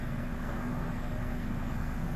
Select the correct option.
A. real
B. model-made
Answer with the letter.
B